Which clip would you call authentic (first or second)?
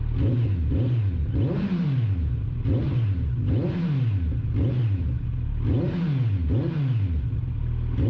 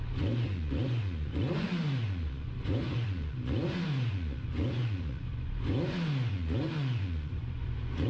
first